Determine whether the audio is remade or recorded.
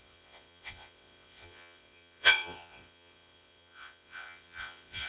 remade